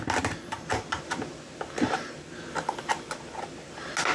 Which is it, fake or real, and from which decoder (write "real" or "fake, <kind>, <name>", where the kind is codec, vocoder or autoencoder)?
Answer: real